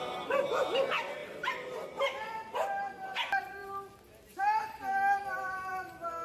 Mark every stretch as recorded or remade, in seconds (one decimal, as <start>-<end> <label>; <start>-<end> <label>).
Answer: 0.0-1.2 recorded; 1.2-2.7 remade; 2.7-6.2 recorded